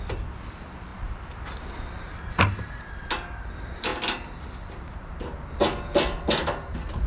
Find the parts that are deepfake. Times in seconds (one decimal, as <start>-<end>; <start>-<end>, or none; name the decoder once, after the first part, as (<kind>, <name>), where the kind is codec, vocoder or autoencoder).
none